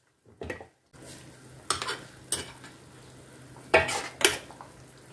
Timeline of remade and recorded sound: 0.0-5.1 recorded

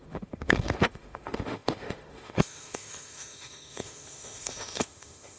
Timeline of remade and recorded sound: 0.0-5.4 remade

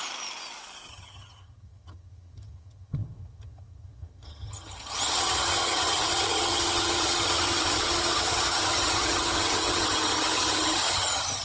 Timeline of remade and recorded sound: 0.0-0.9 recorded; 0.9-11.4 remade

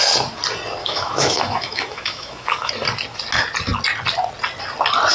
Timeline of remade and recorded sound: 0.0-0.8 recorded; 0.8-2.7 remade; 2.7-5.1 recorded

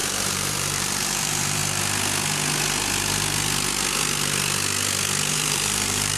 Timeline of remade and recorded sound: 0.0-1.6 remade; 1.6-5.3 recorded; 5.3-6.2 remade

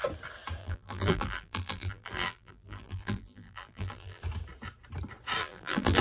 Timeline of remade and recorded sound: 0.0-0.6 recorded; 0.6-4.2 remade; 4.2-5.4 recorded; 5.4-6.0 remade

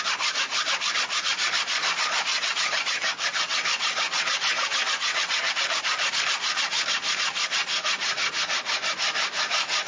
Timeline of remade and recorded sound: 0.0-2.3 recorded; 2.3-5.5 remade; 5.5-9.9 recorded